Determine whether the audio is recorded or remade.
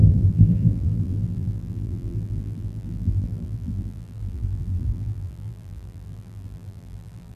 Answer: remade